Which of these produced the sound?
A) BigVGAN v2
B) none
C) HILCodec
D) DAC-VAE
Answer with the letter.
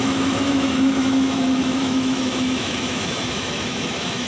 D